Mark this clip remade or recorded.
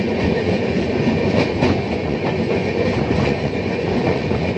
remade